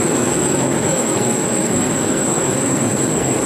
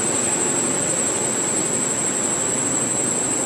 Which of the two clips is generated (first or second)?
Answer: first